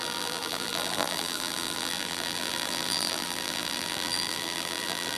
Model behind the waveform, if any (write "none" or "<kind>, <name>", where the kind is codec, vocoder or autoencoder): vocoder, BigVGAN v2